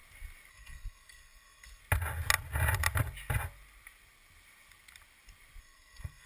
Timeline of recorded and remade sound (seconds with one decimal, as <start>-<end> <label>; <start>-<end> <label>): 0.0-0.5 recorded; 0.5-1.8 remade; 1.8-5.6 recorded; 5.6-6.3 remade